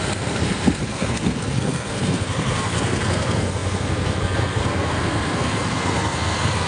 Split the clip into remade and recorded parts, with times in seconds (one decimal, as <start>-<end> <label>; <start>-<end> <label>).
0.0-6.7 remade